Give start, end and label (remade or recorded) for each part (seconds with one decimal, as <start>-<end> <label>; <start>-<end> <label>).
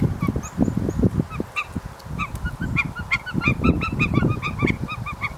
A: 0.0-5.4 recorded